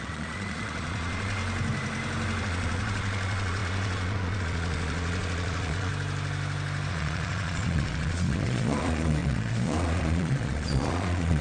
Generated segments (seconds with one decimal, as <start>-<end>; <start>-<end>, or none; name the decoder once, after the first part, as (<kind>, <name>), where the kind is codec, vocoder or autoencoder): 0.0-1.4 (vocoder, Vocos); 2.4-5.9; 6.9-11.4